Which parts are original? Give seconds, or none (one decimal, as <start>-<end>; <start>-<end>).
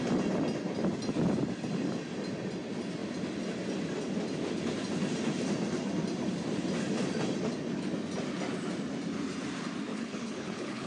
0.0-9.9